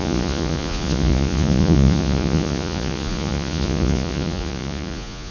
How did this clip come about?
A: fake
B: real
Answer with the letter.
A